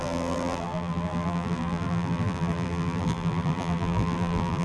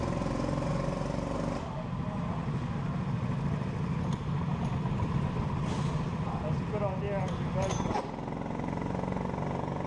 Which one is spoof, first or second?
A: first